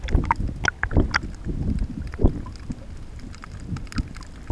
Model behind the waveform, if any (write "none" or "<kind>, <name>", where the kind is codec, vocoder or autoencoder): none